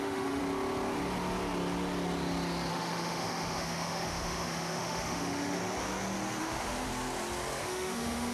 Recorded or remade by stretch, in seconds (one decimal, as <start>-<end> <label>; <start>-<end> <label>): 0.0-0.4 remade; 0.4-2.7 recorded; 2.7-5.6 remade; 5.6-6.4 recorded; 6.4-6.9 remade; 6.9-7.6 recorded; 7.6-8.3 remade